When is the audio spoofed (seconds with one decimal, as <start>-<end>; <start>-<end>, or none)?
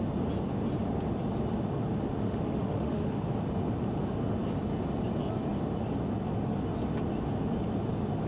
2.2-3.3